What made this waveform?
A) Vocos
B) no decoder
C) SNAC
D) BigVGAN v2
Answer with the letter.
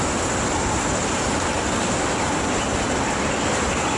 B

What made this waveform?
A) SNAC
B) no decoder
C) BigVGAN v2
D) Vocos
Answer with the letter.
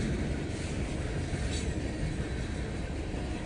B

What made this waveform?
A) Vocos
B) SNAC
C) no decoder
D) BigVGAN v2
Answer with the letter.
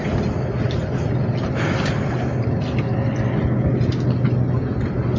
C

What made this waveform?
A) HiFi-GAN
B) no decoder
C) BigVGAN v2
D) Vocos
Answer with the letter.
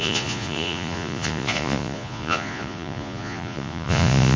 D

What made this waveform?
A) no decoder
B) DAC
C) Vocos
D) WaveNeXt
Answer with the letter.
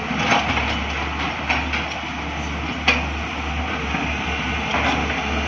A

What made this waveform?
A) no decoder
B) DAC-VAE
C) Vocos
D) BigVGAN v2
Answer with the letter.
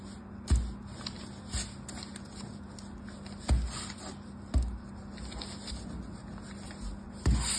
A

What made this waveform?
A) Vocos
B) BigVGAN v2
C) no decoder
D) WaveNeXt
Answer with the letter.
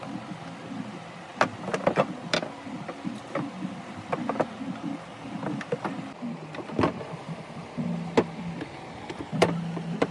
C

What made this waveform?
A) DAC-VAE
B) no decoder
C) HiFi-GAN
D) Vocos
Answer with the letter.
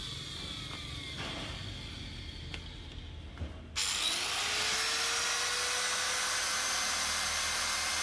B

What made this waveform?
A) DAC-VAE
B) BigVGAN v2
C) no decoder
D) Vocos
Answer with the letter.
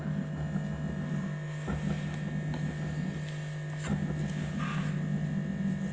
C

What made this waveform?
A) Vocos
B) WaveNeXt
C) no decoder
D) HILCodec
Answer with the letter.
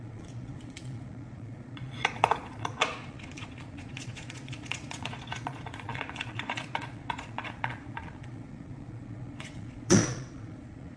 A